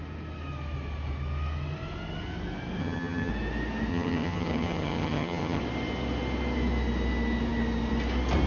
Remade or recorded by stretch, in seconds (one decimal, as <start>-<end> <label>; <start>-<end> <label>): 0.0-2.8 recorded; 2.8-3.3 remade; 3.3-3.9 recorded; 3.9-5.6 remade; 5.6-8.5 recorded